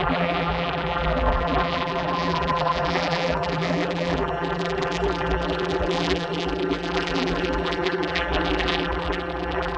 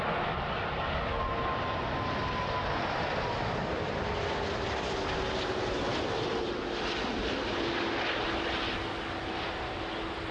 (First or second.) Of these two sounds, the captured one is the second